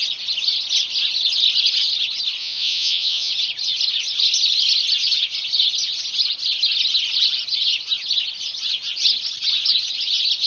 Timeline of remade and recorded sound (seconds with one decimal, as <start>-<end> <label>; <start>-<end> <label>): 0.0-2.4 recorded; 2.4-3.3 remade; 3.3-10.5 recorded